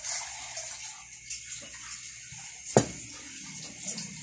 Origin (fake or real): real